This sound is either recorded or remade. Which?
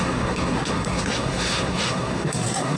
remade